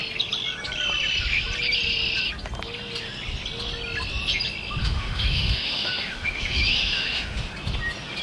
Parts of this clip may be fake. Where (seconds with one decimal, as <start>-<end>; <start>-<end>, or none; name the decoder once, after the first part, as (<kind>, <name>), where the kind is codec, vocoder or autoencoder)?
4.8-7.5 (autoencoder, DAC-VAE)